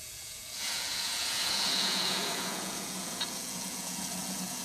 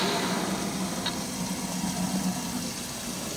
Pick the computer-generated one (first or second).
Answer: first